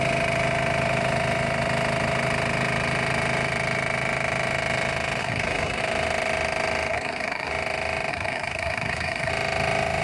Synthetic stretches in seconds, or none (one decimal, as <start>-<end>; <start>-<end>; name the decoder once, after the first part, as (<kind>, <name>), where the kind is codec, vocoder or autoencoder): 5.2-5.8 (codec, SNAC); 6.9-7.5; 8.1-9.3